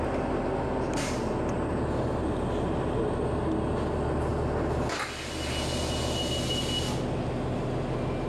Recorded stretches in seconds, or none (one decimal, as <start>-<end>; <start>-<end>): 0.0-8.3